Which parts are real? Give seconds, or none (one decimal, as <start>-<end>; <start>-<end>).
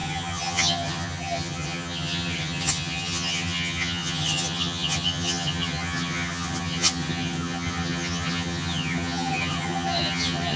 none